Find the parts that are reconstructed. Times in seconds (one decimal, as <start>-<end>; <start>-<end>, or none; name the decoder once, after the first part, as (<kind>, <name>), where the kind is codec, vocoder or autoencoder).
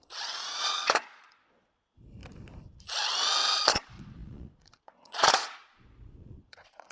0.0-2.2 (vocoder, Vocos); 3.7-6.9